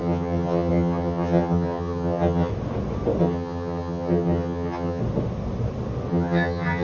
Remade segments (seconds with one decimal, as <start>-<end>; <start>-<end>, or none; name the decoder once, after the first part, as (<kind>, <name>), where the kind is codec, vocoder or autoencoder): 0.0-2.5 (vocoder, HiFi-GAN); 3.2-5.0; 6.1-6.8

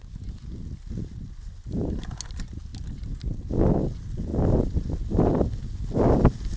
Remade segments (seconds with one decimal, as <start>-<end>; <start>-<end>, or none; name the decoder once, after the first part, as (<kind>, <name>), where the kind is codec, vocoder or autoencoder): none

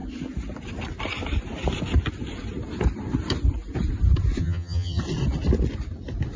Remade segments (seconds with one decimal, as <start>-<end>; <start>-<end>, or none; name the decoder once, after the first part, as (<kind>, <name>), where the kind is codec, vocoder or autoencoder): 4.4-5.0 (vocoder, HiFi-GAN)